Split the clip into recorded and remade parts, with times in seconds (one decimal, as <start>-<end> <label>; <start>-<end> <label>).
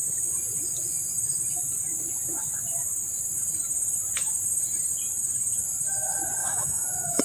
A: 0.0-6.4 recorded; 6.4-7.2 remade